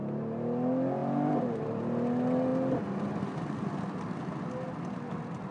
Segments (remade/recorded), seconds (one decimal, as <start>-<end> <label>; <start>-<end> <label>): 0.0-1.0 recorded; 1.0-1.8 remade; 1.8-5.5 recorded